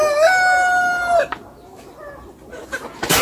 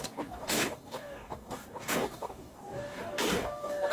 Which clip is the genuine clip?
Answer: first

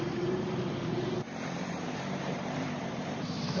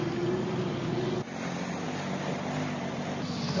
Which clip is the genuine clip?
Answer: second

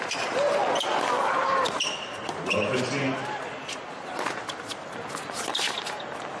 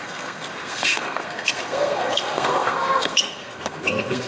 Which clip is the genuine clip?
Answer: first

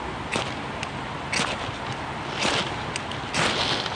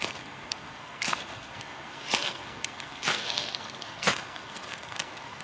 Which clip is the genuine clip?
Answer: first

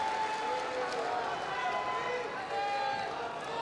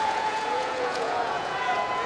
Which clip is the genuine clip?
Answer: first